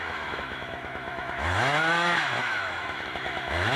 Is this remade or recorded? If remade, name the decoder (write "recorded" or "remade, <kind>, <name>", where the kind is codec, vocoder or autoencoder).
remade, autoencoder, DAC-VAE